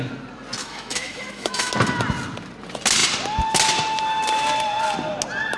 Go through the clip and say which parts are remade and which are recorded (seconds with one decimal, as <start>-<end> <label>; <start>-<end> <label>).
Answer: 0.0-0.6 recorded; 0.6-1.7 remade; 1.7-5.6 recorded